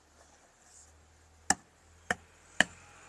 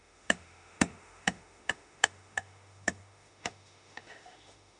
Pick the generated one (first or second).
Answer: second